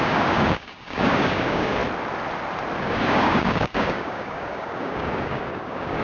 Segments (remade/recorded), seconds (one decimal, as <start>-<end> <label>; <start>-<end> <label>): 0.0-1.8 remade; 1.8-2.8 recorded; 2.8-6.0 remade